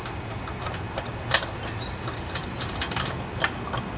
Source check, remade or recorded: recorded